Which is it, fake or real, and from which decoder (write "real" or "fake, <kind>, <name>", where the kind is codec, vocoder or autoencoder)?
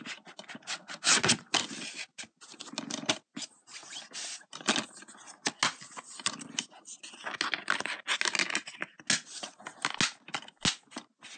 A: real